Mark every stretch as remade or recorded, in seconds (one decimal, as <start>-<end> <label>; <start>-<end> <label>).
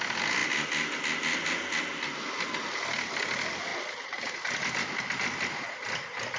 0.0-6.4 recorded